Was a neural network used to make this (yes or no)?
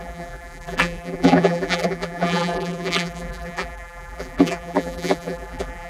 yes